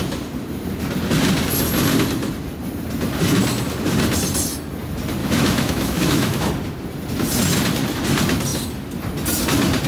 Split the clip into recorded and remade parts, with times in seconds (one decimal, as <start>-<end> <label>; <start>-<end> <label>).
0.0-5.2 recorded; 5.2-6.5 remade; 6.5-9.9 recorded